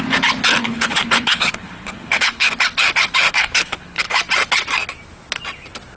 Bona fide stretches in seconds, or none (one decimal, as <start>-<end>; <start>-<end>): 0.0-0.6; 2.5-3.3; 4.2-6.0